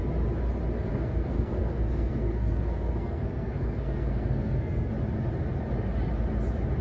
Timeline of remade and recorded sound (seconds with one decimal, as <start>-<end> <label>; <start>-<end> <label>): 0.0-0.9 recorded; 0.9-4.9 remade; 4.9-6.8 recorded